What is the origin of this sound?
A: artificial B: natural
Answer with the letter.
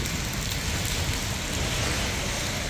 B